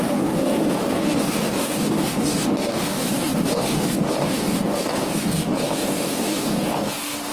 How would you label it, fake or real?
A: fake